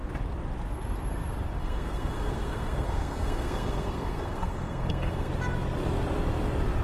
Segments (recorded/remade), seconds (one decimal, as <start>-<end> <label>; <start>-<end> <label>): 0.0-1.6 recorded; 1.6-5.3 remade; 5.3-6.8 recorded